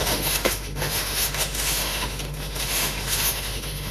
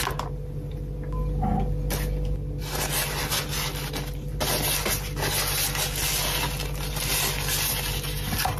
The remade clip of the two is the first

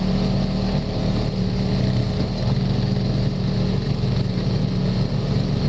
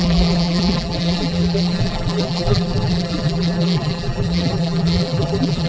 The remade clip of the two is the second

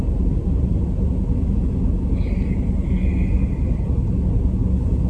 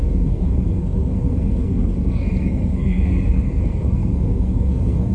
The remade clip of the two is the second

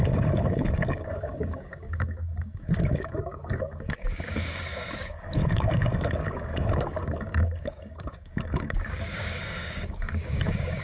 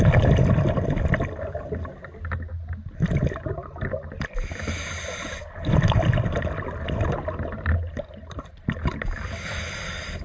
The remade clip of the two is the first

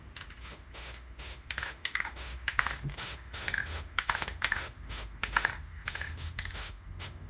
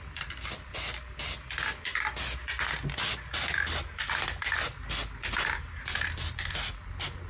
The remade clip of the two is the first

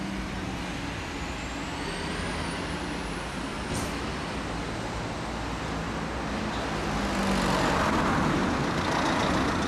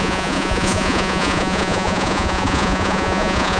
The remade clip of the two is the second